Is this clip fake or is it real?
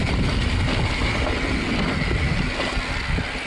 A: real